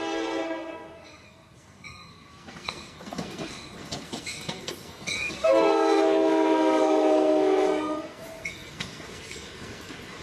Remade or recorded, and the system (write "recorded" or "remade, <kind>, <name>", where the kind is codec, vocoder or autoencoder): remade, codec, SNAC